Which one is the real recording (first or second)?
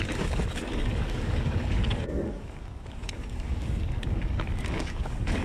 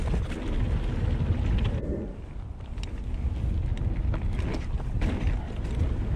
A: second